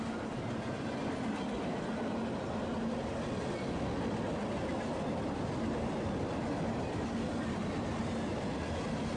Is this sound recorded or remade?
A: recorded